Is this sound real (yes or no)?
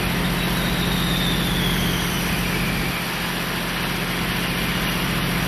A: yes